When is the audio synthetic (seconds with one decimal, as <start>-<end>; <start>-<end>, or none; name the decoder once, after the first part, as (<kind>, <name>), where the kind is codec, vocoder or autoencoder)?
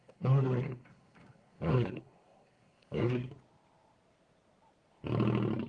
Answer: 0.0-3.3 (codec, SNAC)